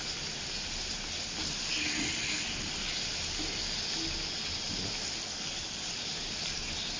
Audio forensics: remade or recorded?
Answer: recorded